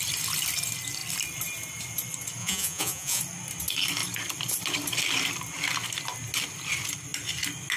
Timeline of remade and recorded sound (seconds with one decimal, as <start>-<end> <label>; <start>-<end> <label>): 0.0-2.4 recorded; 2.4-3.2 remade; 3.2-7.8 recorded